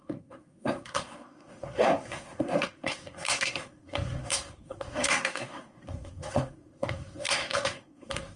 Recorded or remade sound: remade